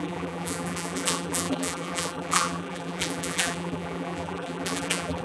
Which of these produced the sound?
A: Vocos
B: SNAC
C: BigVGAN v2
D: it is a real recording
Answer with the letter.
C